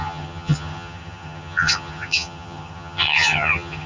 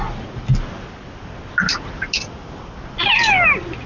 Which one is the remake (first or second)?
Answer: first